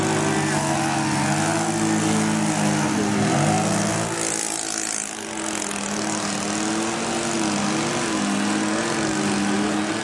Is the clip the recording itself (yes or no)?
yes